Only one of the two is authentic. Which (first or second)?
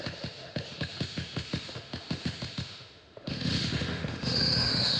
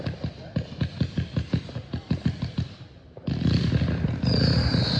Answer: second